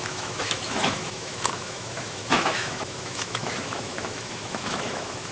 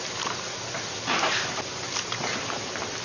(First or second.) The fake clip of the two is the first